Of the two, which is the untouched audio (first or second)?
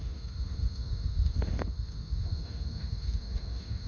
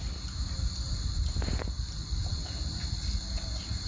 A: second